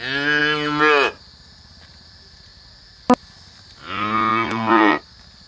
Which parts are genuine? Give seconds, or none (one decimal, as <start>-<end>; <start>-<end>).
0.0-4.3; 5.0-5.5

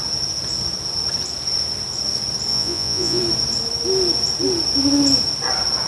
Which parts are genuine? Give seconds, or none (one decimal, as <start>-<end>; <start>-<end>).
0.0-2.5; 3.2-5.9

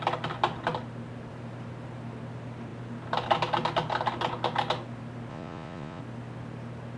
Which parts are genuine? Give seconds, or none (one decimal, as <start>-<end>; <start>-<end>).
0.0-5.3; 6.0-7.0